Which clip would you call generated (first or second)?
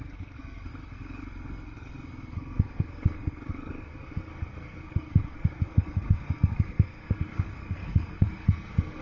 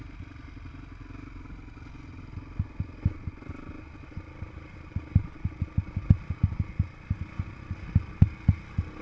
first